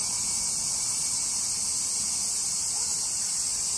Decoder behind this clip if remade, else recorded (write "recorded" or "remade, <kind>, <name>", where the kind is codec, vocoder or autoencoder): recorded